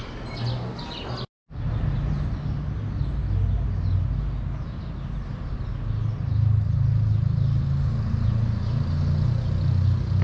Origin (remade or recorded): recorded